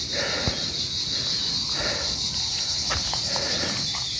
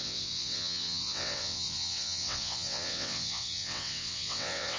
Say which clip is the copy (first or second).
second